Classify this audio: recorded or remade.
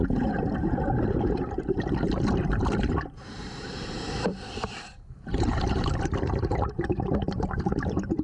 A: remade